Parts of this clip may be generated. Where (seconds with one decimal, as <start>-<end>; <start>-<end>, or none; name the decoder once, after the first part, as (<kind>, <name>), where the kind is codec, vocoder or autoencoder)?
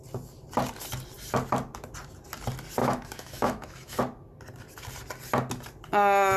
2.8-4.0 (autoencoder, DAC-VAE)